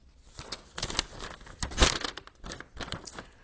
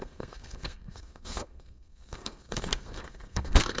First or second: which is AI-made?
second